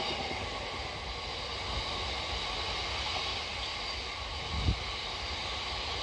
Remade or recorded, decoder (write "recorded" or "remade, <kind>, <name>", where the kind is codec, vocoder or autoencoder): recorded